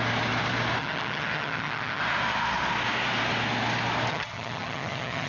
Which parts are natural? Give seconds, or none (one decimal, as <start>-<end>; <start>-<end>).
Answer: 0.0-0.8; 2.0-4.1